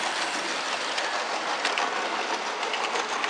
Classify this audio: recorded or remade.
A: recorded